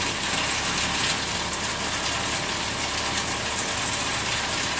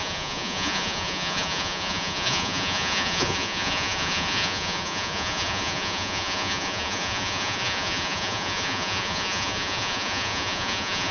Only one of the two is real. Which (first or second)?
first